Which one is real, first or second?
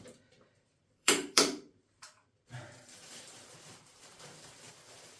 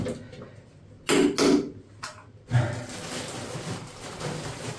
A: second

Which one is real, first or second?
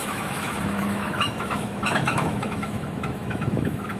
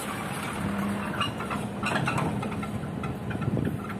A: second